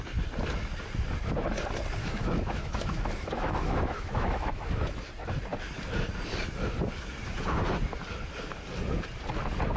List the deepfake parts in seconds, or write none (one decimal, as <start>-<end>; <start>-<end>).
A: 2.0-5.0

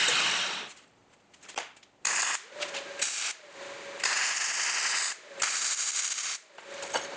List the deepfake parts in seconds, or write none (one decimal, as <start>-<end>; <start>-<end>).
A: none

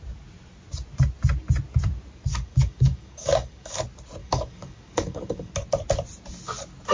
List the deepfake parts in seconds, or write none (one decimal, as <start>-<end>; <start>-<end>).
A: 2.3-3.8; 4.2-5.5

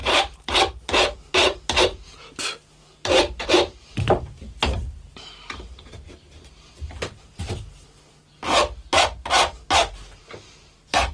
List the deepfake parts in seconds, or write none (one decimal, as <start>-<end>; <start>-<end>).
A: 0.0-0.5; 2.8-7.4

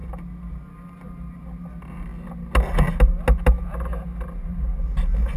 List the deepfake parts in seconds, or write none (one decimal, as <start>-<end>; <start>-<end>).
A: none

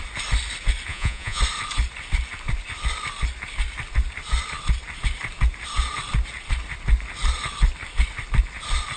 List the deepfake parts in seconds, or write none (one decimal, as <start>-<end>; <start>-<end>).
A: 0.9-1.4

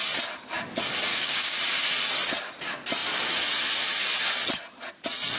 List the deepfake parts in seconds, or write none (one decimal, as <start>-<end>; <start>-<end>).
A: 1.1-1.6